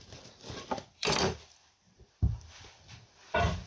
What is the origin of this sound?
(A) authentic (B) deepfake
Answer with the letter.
B